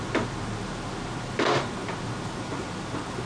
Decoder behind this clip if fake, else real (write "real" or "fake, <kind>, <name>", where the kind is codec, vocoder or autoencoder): real